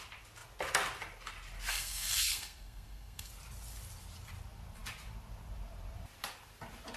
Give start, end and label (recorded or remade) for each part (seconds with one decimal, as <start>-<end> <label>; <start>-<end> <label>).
0.0-1.7 recorded; 1.7-3.3 remade; 3.3-7.0 recorded